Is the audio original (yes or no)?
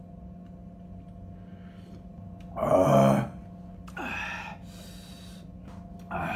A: yes